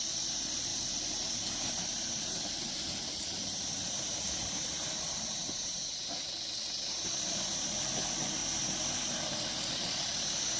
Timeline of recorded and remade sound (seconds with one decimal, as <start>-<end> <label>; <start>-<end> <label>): 0.0-0.7 remade; 0.7-1.7 recorded; 1.7-6.0 remade; 6.0-7.0 recorded; 7.0-8.4 remade; 8.4-9.9 recorded; 9.9-10.6 remade